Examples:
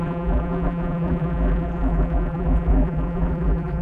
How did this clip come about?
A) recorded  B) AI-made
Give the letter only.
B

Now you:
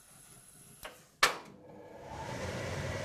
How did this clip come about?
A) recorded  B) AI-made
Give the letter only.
A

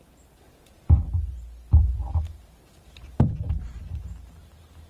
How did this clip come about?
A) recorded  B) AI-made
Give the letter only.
B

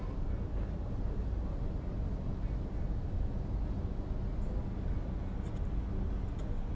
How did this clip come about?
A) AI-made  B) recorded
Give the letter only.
B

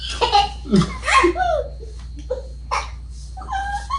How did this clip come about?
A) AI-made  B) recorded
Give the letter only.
B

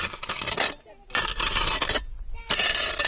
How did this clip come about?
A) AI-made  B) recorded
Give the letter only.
B